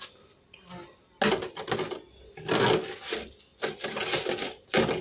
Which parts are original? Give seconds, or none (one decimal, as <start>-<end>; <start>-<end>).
0.0-5.0